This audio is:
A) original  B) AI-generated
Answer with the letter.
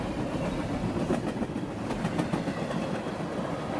A